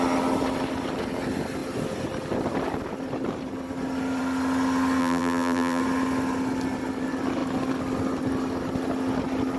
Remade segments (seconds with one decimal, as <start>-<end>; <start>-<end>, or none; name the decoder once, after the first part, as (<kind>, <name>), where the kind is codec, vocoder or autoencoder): 5.0-5.8 (vocoder, BigVGAN v2)